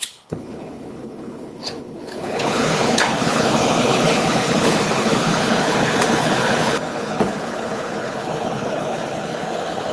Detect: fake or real fake